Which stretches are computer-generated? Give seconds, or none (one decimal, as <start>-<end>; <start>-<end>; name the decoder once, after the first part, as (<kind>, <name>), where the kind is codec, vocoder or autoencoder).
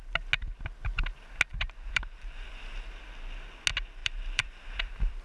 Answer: 1.5-2.5 (vocoder, BigVGAN v2); 4.0-5.2